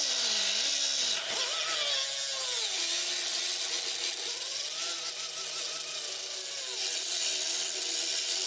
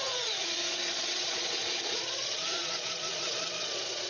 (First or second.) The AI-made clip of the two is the second